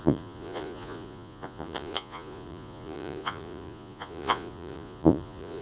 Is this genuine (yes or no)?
no